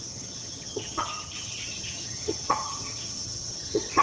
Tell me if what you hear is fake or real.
fake